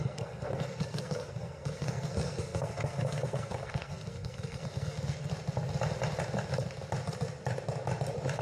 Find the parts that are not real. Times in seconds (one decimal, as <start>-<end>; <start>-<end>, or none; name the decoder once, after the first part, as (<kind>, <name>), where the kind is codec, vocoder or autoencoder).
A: 0.0-5.3 (codec, SNAC)